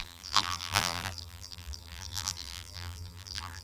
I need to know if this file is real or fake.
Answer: fake